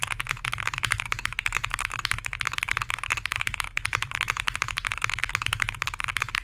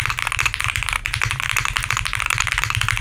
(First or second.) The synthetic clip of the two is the first